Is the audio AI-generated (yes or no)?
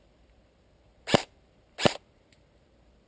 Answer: no